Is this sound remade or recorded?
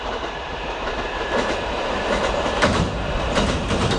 remade